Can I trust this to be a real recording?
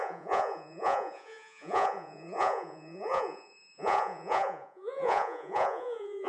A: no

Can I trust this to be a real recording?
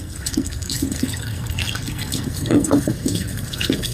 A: no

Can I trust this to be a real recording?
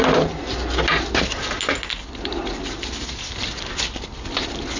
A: yes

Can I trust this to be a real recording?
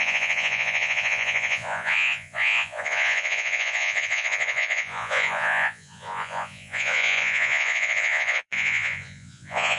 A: no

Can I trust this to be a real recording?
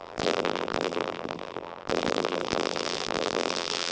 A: no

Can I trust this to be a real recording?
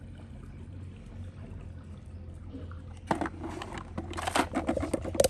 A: yes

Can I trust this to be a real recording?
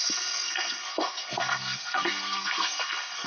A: no